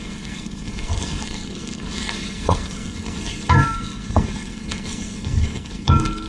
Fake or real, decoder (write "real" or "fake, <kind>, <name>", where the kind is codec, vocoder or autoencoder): fake, codec, SNAC